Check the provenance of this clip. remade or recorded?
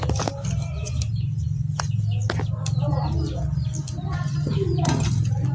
recorded